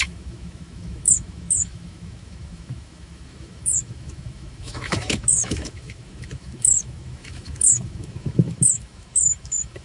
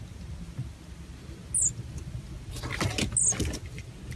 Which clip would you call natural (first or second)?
second